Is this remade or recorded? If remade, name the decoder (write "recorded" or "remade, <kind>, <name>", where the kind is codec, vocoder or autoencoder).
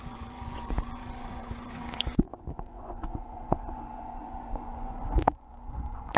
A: remade, vocoder, Vocos